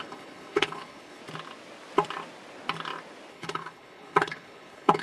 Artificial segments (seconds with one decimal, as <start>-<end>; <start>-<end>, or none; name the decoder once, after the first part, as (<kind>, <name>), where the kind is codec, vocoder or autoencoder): 0.0-1.2 (codec, HILCodec); 3.3-5.0